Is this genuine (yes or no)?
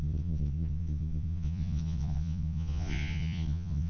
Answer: no